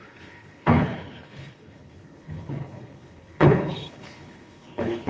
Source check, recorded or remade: remade